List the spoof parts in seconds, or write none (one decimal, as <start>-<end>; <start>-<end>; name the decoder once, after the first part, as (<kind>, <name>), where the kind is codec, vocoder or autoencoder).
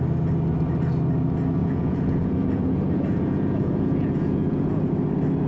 1.6-4.9 (vocoder, Vocos)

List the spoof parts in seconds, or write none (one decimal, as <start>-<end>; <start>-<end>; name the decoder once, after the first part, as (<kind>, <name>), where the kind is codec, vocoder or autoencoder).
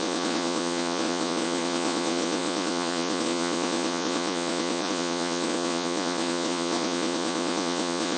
0.0-8.2 (vocoder, Vocos)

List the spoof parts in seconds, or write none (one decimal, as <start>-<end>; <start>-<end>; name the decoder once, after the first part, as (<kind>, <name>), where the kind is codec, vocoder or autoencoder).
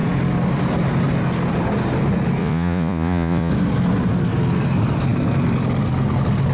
2.4-3.5 (vocoder, Vocos)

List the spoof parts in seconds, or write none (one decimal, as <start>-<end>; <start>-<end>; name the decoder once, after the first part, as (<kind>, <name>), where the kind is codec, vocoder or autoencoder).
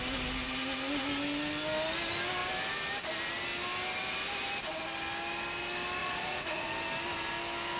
6.0-6.7 (vocoder, Vocos)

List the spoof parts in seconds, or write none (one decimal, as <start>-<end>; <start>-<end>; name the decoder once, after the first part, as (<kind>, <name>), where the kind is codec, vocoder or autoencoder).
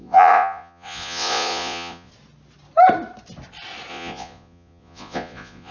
0.0-2.1 (vocoder, Vocos); 3.9-5.7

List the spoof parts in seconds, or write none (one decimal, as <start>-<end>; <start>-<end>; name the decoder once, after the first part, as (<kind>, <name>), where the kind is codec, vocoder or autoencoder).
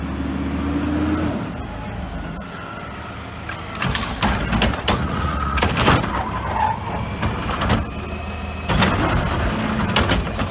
4.7-5.7 (vocoder, Vocos)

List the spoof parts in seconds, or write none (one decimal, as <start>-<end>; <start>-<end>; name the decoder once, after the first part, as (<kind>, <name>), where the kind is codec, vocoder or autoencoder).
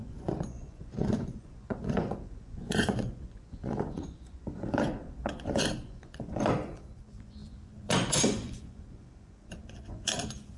0.0-10.6 (vocoder, Vocos)